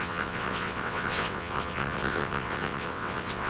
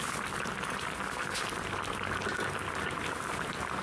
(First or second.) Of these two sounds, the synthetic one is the first